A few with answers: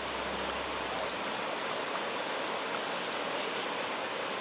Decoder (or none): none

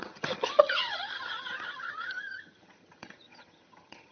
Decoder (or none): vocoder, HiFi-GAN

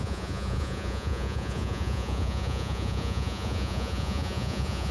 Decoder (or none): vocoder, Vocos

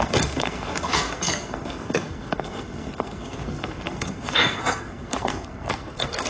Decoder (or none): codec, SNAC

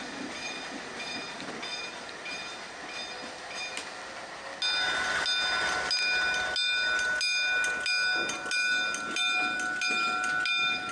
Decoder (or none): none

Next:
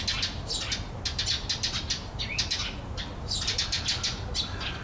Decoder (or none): none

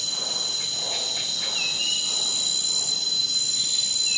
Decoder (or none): none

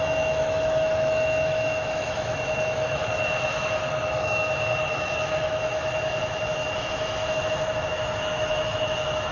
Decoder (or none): autoencoder, DAC-VAE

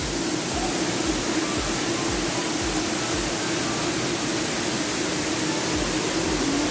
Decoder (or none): none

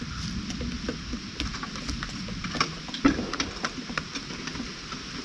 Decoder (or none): none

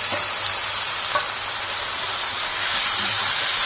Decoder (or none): none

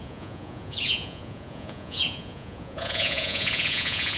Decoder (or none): vocoder, Vocos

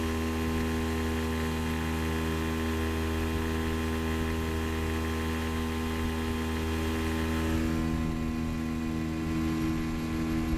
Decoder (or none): none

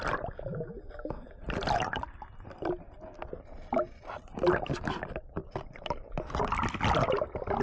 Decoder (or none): none